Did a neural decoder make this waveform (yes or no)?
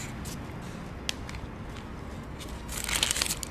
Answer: no